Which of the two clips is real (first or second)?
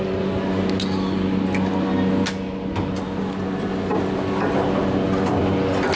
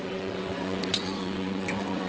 first